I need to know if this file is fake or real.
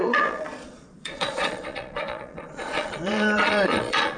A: fake